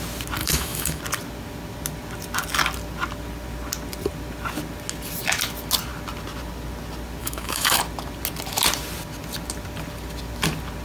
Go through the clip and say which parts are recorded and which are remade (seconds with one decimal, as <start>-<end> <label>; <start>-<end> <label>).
0.0-0.4 recorded; 0.4-1.0 remade; 1.0-7.2 recorded; 7.2-7.8 remade; 7.8-10.8 recorded